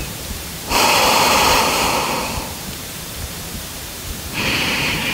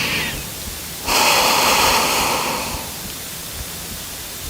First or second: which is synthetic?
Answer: first